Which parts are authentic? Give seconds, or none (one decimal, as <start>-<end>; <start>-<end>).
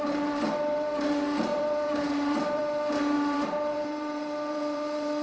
none